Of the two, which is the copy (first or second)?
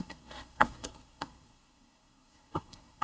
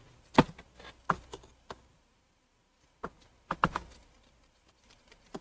first